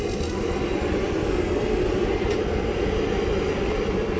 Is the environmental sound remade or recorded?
recorded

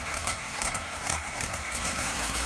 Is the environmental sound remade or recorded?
remade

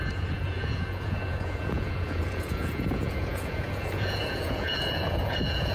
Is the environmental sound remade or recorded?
remade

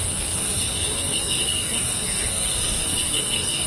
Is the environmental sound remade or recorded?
remade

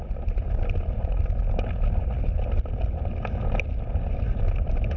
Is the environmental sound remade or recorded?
recorded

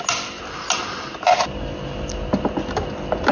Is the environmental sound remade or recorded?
recorded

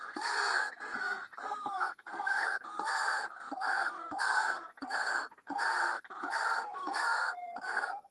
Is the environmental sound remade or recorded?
remade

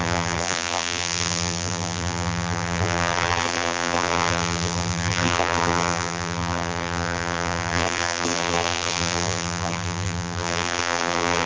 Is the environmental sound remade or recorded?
remade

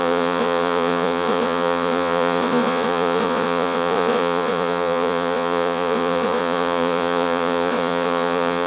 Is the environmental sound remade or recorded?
remade